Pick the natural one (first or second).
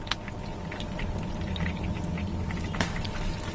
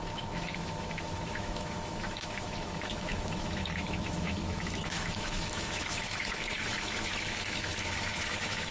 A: first